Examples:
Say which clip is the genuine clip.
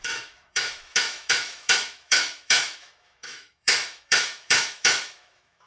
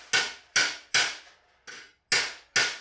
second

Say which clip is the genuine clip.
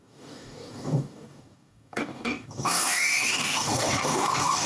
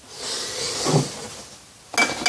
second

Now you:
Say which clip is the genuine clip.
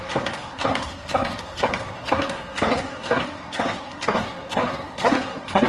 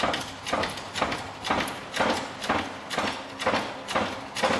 second